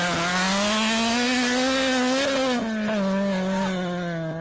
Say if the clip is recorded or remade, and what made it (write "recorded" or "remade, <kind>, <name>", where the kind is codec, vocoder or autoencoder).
recorded